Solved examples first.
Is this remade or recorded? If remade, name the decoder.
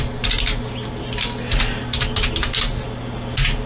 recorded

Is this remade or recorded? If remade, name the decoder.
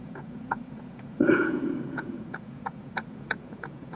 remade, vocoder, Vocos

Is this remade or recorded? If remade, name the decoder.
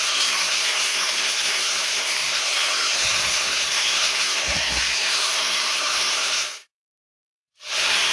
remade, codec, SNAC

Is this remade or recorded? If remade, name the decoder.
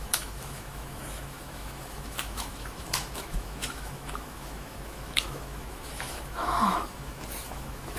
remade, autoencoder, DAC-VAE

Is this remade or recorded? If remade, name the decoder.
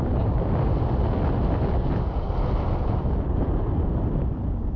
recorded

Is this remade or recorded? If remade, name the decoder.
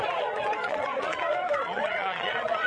remade, vocoder, Vocos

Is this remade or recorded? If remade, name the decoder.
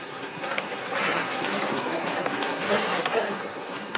remade, codec, SNAC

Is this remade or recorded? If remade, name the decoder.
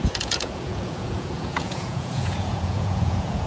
remade, vocoder, Vocos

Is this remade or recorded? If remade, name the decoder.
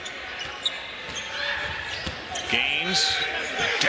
recorded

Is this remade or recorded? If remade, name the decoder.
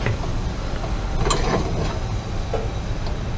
recorded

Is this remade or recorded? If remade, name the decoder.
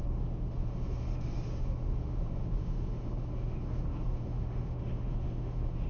remade, autoencoder, DAC-VAE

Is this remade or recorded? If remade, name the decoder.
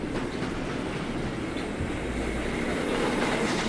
recorded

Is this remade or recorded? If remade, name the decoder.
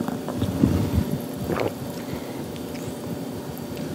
recorded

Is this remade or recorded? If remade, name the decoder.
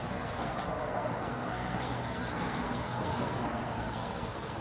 remade, codec, SNAC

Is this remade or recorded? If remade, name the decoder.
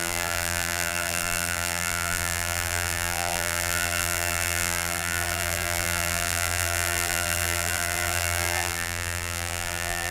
remade, vocoder, BigVGAN v2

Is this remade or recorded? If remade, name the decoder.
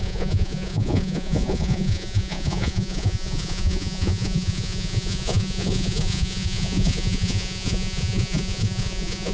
remade, vocoder, Vocos